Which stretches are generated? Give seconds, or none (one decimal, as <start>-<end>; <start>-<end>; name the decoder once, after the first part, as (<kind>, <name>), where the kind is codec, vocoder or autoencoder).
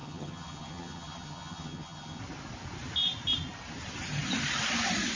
0.0-2.2 (vocoder, HiFi-GAN)